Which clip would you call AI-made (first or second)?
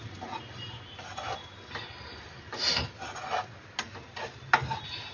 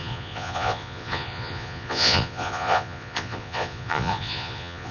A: second